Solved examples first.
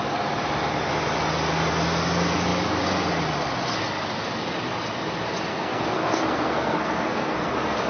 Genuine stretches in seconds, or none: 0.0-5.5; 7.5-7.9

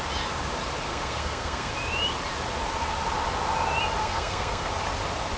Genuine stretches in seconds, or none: 0.0-0.9; 1.7-4.0; 4.7-5.4

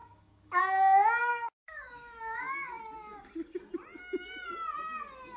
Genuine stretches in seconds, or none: 0.6-1.2; 2.8-5.4

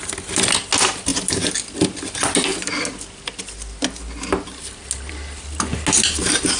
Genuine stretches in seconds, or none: 0.0-6.6

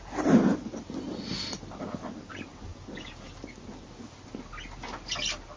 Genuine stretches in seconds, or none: 0.0-5.6

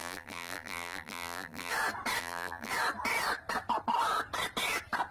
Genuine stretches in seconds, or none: 1.7-2.2; 2.7-5.1

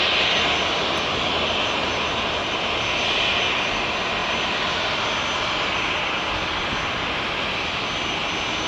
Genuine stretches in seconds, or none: 0.0-8.7

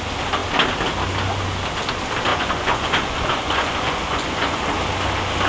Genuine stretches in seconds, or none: 0.0-2.3; 4.6-5.5